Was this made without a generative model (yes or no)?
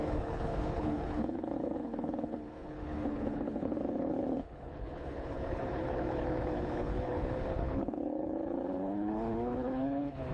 no